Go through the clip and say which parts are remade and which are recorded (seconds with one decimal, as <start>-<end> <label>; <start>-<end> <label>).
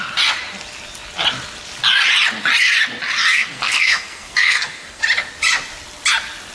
0.0-3.3 recorded; 3.3-5.0 remade; 5.0-6.5 recorded